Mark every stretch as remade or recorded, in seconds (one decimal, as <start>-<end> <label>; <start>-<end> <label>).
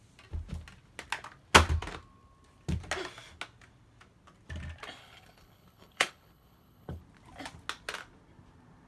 0.0-5.0 recorded; 5.0-7.0 remade; 7.0-8.9 recorded